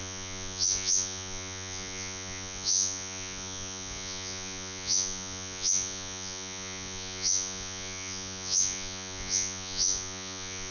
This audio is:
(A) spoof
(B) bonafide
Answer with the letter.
A